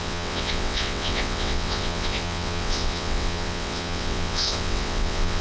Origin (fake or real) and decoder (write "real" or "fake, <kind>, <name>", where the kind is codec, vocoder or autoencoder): fake, vocoder, WaveNeXt